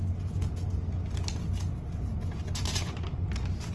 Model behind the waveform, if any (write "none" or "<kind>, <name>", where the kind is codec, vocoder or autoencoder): none